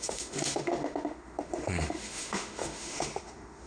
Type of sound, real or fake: fake